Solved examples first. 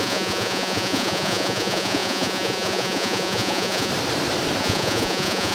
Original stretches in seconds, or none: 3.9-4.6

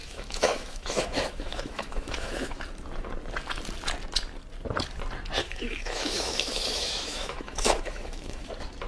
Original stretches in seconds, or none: 2.6-5.4; 8.5-8.9

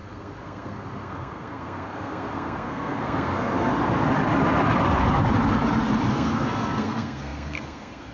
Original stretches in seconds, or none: 3.7-6.1

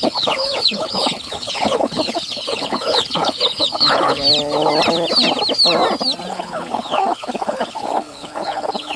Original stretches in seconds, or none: 4.2-6.3

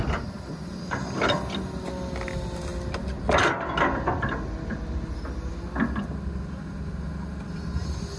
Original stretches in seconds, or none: 0.0-8.2